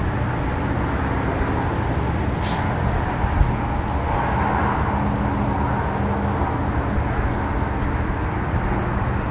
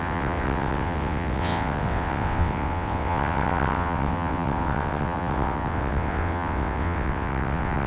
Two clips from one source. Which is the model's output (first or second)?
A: second